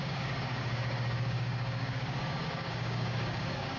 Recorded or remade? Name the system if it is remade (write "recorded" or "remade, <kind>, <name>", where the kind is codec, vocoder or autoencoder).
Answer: remade, codec, DAC